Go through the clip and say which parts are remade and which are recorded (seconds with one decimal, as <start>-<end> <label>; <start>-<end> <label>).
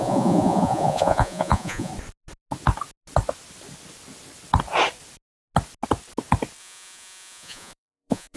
0.0-1.9 remade; 1.9-6.6 recorded; 6.6-8.4 remade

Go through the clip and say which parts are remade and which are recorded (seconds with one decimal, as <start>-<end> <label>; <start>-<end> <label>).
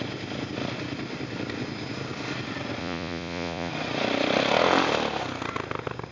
0.0-2.8 recorded; 2.8-3.7 remade; 3.7-6.1 recorded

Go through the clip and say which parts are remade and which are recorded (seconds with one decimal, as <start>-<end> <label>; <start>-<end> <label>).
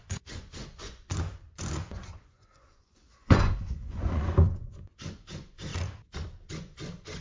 0.0-5.7 remade; 5.7-6.5 recorded; 6.5-7.2 remade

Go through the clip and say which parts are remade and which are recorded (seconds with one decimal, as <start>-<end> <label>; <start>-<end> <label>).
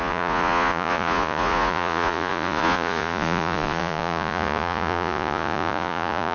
0.0-6.3 remade